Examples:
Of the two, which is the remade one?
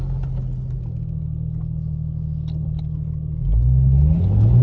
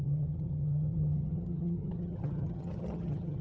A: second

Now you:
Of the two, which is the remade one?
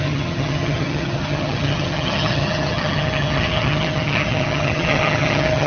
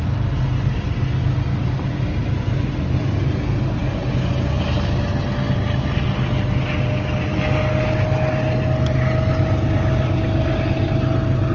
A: first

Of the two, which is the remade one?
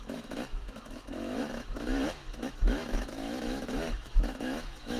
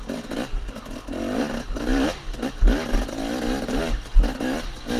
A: first